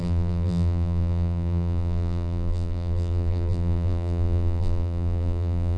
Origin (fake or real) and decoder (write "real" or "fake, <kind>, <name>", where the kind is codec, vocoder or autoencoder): fake, vocoder, BigVGAN v2